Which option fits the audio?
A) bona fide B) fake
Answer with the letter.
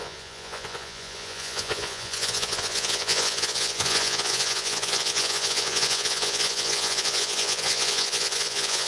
B